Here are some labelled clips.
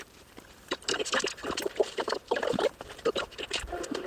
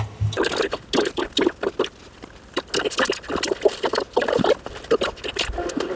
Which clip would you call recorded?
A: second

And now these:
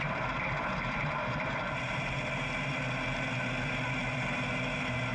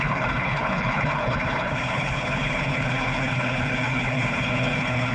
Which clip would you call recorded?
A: first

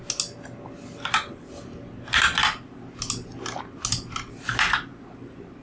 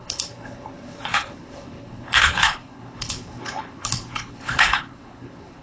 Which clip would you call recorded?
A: first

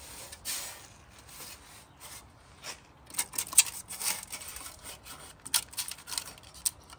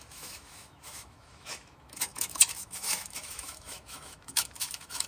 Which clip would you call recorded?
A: first